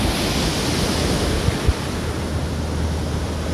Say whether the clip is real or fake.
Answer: real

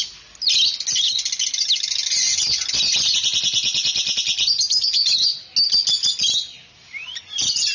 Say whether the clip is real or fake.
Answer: real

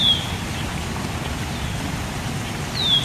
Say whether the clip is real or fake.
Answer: real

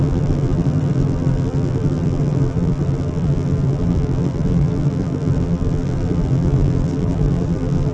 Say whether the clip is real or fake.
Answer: fake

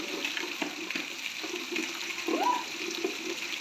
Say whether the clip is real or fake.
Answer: real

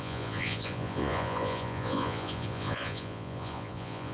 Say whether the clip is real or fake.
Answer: fake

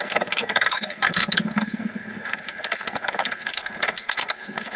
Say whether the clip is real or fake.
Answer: fake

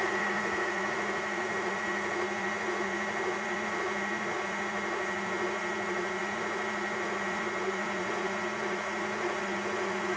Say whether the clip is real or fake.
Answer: fake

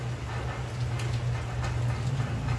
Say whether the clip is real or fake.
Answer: fake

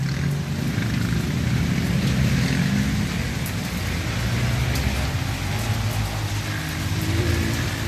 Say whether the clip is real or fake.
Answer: real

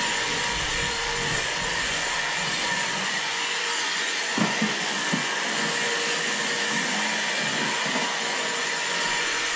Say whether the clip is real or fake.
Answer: fake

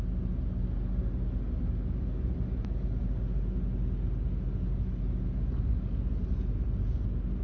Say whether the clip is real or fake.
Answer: real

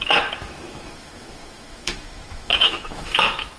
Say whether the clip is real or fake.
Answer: fake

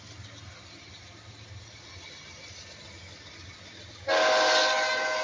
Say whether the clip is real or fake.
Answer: real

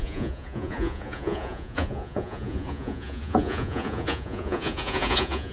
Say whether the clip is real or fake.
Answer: fake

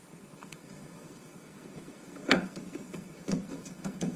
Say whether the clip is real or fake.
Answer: fake